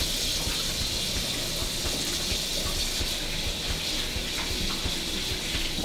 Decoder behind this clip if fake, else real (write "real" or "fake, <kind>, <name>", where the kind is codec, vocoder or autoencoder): real